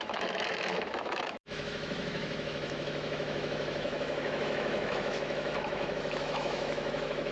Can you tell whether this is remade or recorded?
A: remade